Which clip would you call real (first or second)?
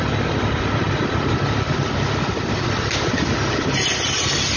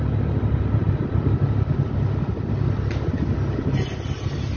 second